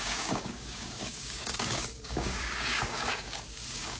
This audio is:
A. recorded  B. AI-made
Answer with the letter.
B